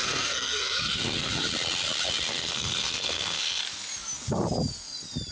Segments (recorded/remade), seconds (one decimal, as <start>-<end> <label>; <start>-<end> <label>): 0.0-1.3 remade; 1.3-2.3 recorded; 2.3-3.6 remade; 3.6-5.3 recorded